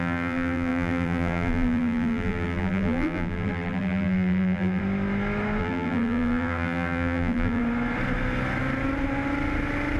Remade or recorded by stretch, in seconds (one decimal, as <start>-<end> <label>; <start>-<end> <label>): 0.0-4.8 remade; 4.8-5.6 recorded; 5.6-7.6 remade; 7.6-10.0 recorded